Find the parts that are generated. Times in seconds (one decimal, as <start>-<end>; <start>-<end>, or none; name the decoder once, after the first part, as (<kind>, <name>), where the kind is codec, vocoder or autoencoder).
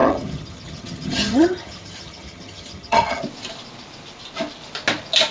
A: 0.0-3.2 (vocoder, HiFi-GAN)